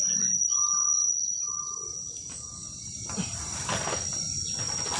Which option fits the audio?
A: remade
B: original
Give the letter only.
B